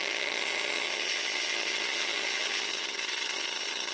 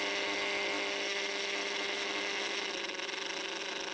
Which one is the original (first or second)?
second